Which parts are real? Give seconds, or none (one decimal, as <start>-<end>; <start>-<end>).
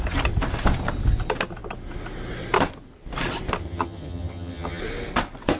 0.0-3.6; 4.8-5.6